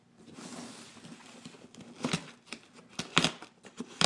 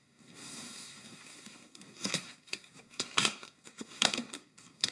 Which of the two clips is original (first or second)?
first